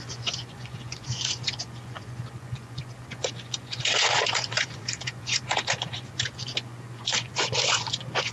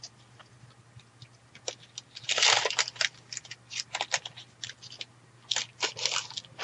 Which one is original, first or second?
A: second